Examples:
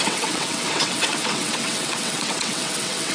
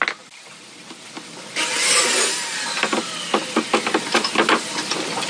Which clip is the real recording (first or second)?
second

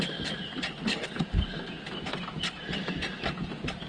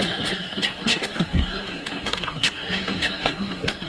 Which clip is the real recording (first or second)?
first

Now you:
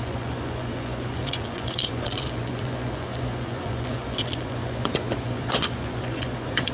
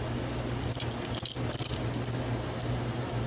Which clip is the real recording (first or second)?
second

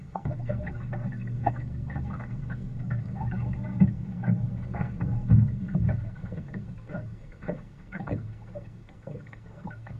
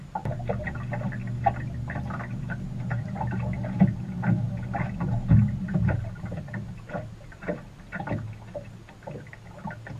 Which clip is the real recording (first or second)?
second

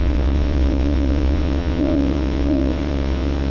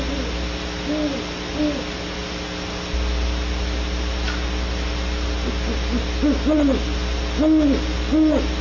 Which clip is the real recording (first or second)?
second